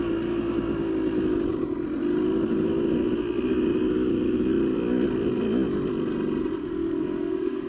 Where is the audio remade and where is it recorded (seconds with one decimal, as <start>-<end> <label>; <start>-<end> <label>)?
0.0-6.6 recorded; 6.6-7.7 remade